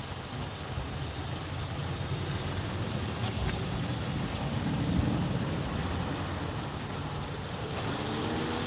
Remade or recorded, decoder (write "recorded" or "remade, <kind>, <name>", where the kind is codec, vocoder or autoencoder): recorded